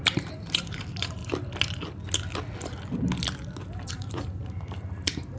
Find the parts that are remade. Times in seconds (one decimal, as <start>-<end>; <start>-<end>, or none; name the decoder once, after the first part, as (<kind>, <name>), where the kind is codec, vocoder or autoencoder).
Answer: 0.0-1.2 (vocoder, BigVGAN v2); 3.9-5.4